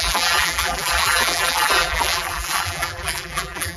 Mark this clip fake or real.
fake